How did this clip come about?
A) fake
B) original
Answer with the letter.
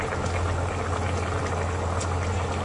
B